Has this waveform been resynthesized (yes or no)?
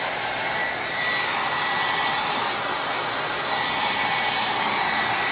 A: no